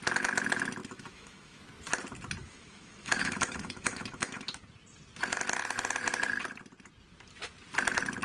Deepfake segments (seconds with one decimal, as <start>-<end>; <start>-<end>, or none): 0.8-1.6; 2.4-4.6